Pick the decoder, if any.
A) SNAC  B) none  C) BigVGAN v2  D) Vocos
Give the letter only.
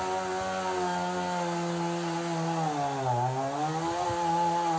B